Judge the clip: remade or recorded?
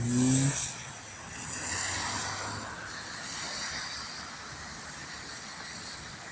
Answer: recorded